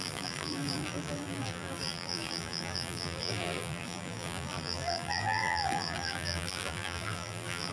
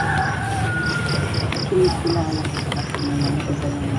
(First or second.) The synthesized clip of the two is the first